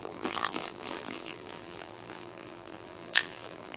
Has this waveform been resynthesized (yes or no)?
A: yes